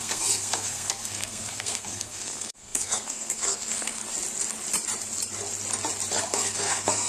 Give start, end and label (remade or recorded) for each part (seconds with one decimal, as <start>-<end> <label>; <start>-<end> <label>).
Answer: 0.0-4.0 remade; 4.0-6.2 recorded; 6.2-7.1 remade